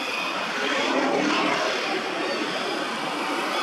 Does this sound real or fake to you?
real